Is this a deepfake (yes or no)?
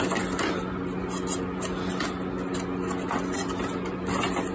no